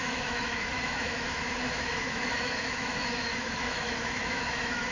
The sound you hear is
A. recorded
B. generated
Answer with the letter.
B